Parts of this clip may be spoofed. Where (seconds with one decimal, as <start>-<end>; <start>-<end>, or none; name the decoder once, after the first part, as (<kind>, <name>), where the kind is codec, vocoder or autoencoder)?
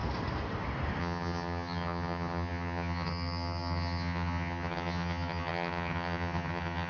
1.0-6.9 (vocoder, HiFi-GAN)